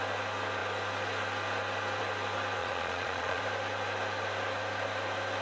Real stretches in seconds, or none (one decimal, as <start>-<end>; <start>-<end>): 0.0-2.6; 3.4-5.4